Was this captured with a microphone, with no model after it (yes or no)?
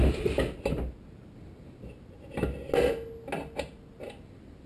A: yes